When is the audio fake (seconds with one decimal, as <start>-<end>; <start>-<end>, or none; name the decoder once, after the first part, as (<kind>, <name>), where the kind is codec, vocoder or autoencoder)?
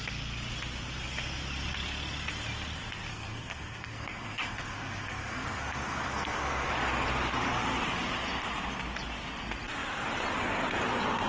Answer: 3.1-6.7 (codec, SNAC)